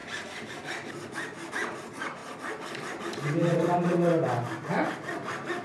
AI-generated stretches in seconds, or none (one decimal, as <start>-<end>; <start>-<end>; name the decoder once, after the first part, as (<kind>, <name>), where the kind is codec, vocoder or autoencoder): 0.0-1.5 (vocoder, BigVGAN v2); 2.2-3.0